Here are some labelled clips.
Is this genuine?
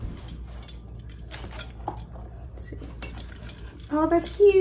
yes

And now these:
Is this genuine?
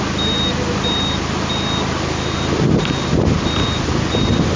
yes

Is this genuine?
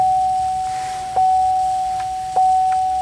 yes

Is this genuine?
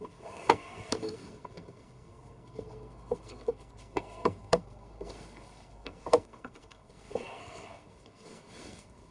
no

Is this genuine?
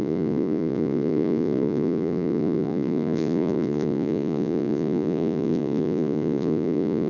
no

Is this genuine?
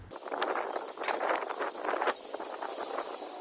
yes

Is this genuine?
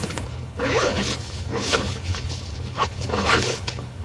no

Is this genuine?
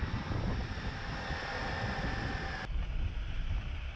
yes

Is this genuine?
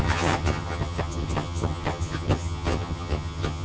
no